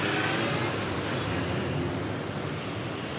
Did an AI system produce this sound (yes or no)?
no